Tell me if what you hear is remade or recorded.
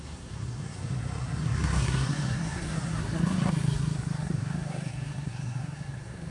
remade